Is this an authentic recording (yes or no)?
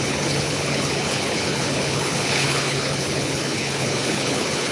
no